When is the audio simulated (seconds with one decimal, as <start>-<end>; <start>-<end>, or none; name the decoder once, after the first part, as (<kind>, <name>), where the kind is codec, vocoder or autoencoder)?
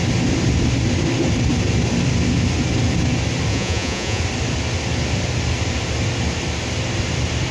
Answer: 3.5-4.2 (vocoder, Vocos)